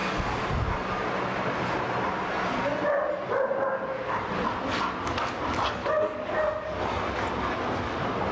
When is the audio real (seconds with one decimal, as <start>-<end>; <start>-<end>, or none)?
0.0-8.3